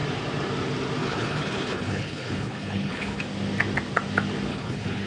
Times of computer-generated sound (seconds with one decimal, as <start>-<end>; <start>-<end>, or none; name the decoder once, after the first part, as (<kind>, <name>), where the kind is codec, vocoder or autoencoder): 1.0-3.2 (codec, HILCodec); 4.5-5.1